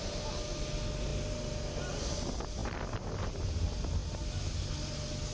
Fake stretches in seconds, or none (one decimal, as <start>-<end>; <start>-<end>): none